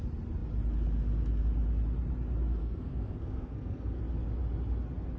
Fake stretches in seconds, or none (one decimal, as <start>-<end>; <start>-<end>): 2.6-4.0